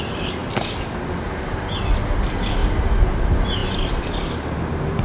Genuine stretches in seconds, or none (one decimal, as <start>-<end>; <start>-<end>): 0.0-5.0